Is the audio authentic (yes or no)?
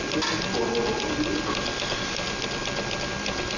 yes